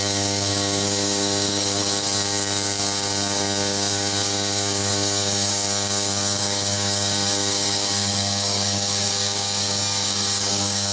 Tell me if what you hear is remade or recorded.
remade